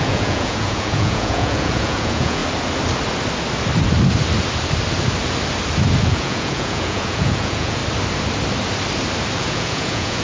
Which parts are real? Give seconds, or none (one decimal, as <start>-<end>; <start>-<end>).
2.4-6.0; 7.8-9.4